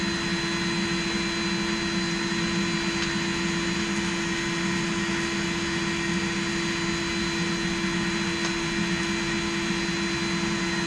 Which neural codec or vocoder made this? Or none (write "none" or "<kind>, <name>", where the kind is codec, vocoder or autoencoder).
none